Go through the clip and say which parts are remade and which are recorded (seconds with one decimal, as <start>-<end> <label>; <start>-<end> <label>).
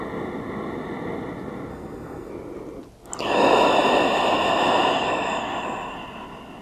0.0-1.7 recorded; 1.7-2.3 remade; 2.3-6.6 recorded